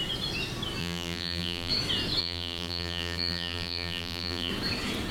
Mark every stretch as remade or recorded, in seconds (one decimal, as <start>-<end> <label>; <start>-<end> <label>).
0.0-0.8 recorded; 0.8-1.7 remade; 1.7-2.2 recorded; 2.2-4.5 remade; 4.5-5.1 recorded